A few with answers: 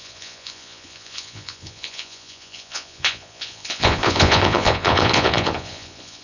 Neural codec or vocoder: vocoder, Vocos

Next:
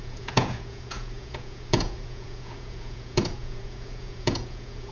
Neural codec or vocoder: vocoder, Vocos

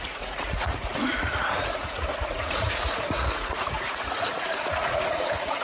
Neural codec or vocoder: vocoder, Vocos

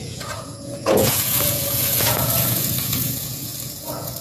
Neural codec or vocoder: vocoder, Vocos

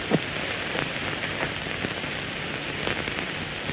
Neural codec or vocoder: none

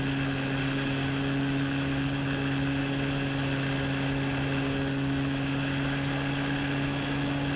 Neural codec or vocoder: none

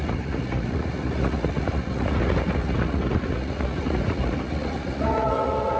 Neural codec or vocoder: vocoder, Vocos